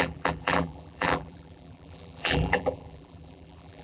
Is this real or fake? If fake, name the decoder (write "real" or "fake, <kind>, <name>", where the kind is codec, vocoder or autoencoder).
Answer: fake, vocoder, BigVGAN v2